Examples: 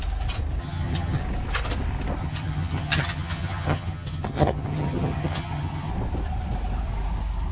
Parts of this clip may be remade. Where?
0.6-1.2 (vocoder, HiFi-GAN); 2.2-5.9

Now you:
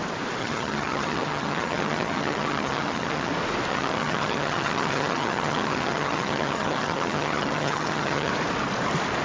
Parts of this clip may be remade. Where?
0.4-3.3 (vocoder, HiFi-GAN); 3.7-8.3

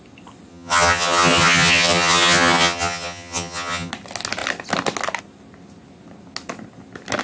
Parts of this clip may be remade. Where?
0.5-3.9 (vocoder, HiFi-GAN)

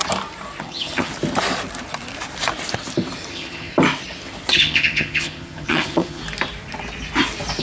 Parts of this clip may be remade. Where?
0.6-1.1 (vocoder, HiFi-GAN); 3.3-3.7; 4.5-6.2

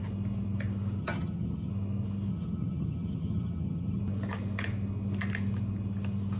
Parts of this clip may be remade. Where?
1.0-1.7 (vocoder, HiFi-GAN); 2.3-4.0

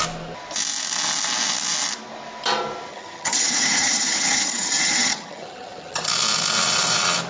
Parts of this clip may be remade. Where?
2.9-6.0 (vocoder, HiFi-GAN)

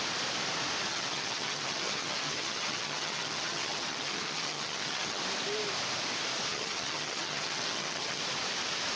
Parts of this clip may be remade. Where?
0.9-5.2 (vocoder, HiFi-GAN); 6.5-8.2